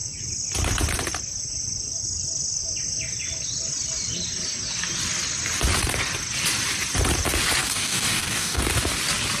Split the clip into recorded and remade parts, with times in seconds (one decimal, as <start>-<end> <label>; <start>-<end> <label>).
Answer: 0.0-7.6 recorded; 7.6-8.6 remade; 8.6-9.4 recorded